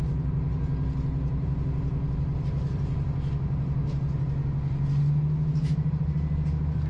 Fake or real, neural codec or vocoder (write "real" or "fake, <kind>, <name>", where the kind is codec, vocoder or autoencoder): real